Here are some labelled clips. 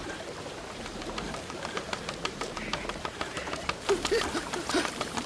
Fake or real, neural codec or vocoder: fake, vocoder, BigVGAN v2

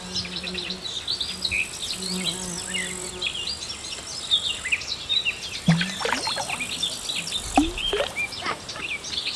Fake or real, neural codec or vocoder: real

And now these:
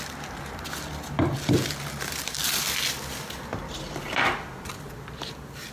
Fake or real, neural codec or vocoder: fake, vocoder, BigVGAN v2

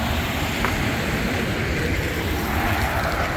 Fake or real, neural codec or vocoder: fake, vocoder, BigVGAN v2